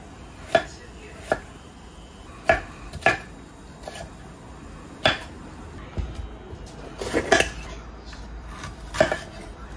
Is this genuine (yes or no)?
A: yes